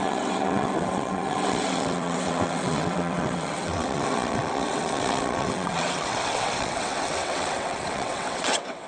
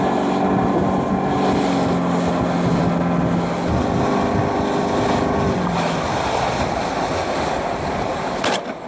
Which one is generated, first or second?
first